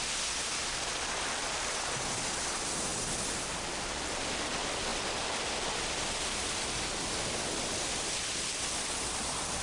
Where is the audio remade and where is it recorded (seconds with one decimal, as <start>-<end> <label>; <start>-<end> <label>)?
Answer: 0.0-9.6 recorded